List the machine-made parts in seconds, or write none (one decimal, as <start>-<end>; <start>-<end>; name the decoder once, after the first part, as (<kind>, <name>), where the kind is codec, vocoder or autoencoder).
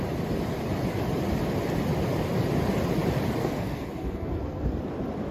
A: 3.4-4.8 (codec, SNAC)